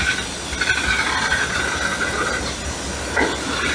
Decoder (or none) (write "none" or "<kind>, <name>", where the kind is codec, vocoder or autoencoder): none